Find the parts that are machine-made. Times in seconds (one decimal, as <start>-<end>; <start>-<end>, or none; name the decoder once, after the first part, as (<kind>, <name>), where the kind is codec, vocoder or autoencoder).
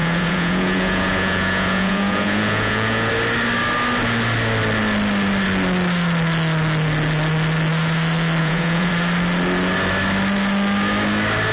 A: 0.0-3.1 (vocoder, Vocos); 8.4-8.9